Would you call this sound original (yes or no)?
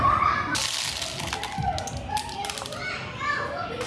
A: yes